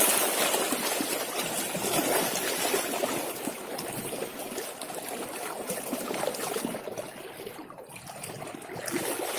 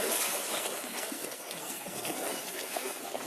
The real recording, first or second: first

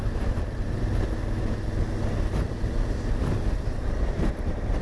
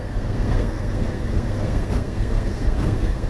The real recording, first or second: first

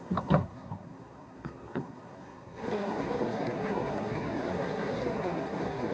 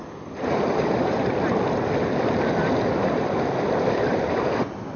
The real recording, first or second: second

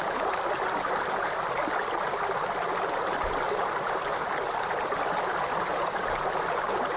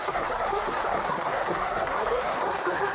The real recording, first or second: first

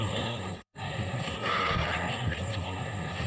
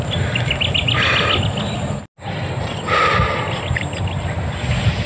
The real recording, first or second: second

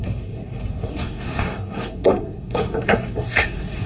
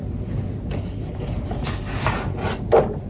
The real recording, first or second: second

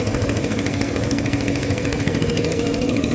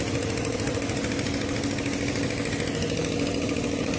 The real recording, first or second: second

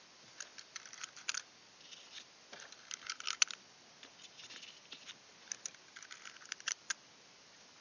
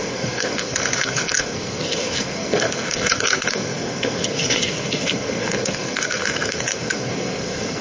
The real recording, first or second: first